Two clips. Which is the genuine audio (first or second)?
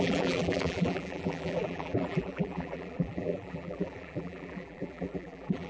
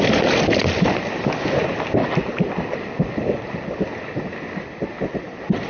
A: second